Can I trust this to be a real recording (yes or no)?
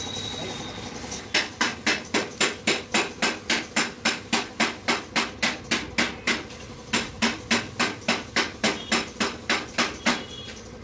yes